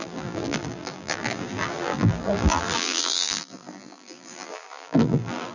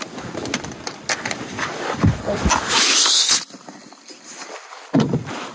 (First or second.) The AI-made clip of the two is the first